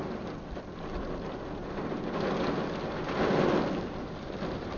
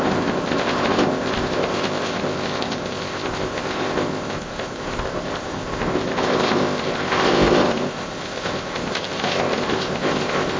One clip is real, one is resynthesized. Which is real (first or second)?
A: first